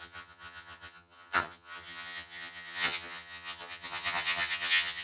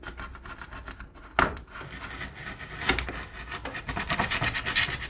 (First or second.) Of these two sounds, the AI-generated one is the first